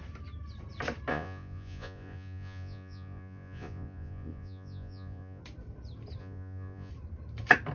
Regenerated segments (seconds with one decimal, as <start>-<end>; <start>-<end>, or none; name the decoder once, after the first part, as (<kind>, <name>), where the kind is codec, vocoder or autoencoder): 1.1-5.4 (vocoder, Vocos); 6.2-6.9

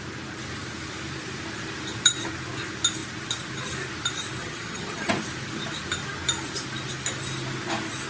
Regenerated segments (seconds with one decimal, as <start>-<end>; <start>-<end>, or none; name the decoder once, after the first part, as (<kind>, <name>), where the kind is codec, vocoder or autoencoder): 4.4-5.1 (vocoder, HiFi-GAN)

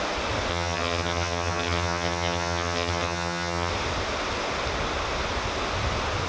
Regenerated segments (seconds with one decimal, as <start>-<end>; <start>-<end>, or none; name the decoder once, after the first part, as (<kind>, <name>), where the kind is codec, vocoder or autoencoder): 0.5-3.7 (vocoder, HiFi-GAN)

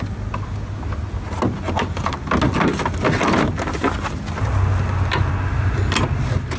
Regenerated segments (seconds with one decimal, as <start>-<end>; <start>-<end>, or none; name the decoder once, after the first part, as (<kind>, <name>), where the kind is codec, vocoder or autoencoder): none

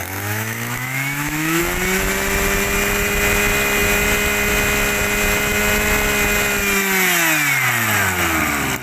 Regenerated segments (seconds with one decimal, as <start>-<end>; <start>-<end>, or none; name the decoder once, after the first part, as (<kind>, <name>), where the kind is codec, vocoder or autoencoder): 0.0-1.6 (autoencoder, DAC-VAE)

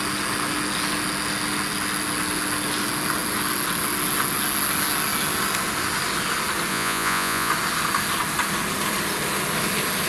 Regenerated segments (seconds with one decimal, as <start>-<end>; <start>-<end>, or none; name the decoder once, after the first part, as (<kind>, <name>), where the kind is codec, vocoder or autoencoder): 6.7-7.5 (vocoder, Vocos)

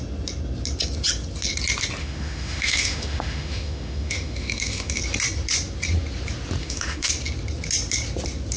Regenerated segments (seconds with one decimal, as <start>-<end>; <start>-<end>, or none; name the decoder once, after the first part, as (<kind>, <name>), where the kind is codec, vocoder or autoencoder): 2.0-5.0 (autoencoder, DAC-VAE); 6.6-7.1